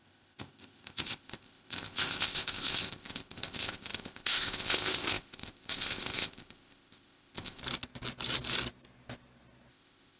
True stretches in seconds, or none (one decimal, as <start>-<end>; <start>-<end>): 7.6-9.7